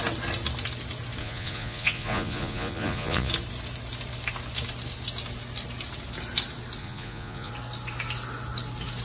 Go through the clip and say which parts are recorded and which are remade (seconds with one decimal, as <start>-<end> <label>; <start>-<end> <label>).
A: 0.0-1.2 recorded; 1.2-3.3 remade; 3.3-6.8 recorded; 6.8-7.5 remade; 7.5-9.0 recorded